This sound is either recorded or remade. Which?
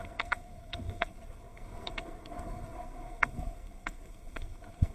remade